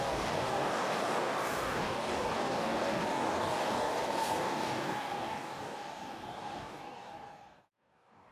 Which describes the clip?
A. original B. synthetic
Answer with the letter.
B